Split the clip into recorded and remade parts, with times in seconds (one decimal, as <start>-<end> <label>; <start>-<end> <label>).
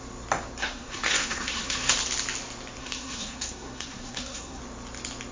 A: 0.0-0.6 recorded; 0.6-1.9 remade; 1.9-2.8 recorded; 2.8-4.6 remade; 4.6-5.3 recorded